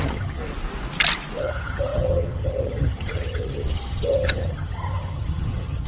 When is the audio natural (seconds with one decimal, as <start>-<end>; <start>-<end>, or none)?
0.4-1.4